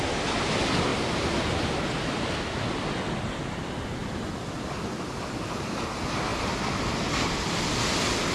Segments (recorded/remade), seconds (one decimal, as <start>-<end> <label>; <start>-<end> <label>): 0.0-0.9 recorded; 0.9-1.5 remade; 1.5-8.3 recorded